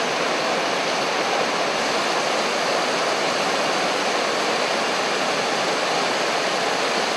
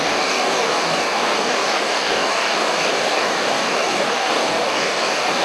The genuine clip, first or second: first